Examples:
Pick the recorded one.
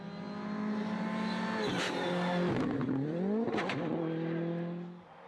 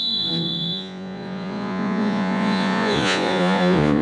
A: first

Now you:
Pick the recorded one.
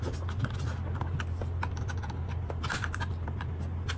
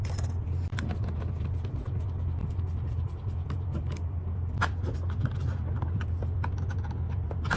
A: first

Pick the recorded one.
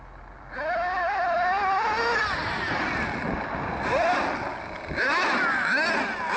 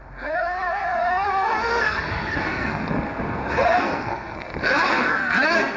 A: first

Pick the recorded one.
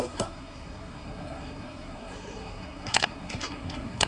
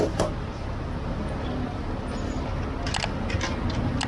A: second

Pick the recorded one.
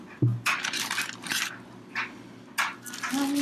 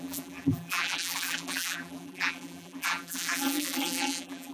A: first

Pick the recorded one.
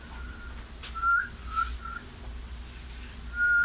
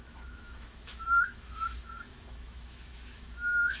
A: first